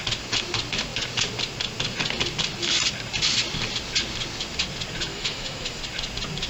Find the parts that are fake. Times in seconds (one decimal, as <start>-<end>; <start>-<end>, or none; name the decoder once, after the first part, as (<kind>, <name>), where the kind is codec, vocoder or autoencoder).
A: 5.1-5.8 (autoencoder, DAC-VAE)